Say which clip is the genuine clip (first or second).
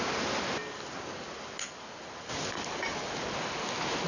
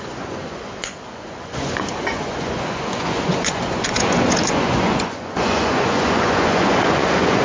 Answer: first